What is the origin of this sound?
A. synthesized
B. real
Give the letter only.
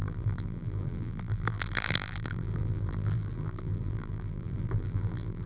A